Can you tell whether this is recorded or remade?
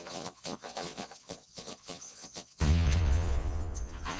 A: remade